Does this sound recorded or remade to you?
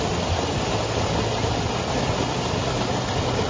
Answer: recorded